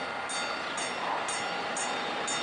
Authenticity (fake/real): real